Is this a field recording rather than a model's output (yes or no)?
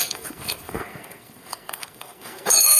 no